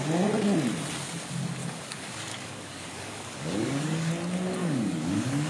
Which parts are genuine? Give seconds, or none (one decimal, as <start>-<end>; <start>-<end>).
0.0-1.6; 4.1-4.6